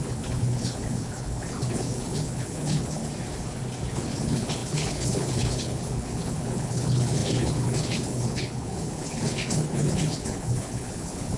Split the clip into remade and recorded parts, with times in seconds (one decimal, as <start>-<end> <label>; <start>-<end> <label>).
0.0-3.0 remade; 3.0-3.9 recorded; 3.9-11.4 remade